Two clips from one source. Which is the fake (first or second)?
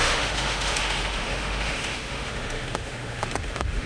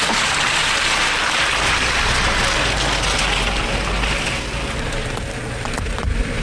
first